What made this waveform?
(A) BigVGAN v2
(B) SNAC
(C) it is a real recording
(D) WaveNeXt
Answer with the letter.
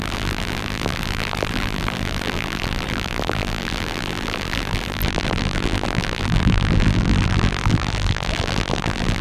A